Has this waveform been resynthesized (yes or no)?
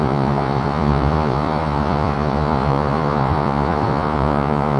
yes